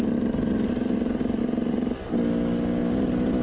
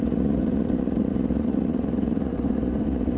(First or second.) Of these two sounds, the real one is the first